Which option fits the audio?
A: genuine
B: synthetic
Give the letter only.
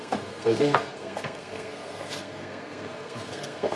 B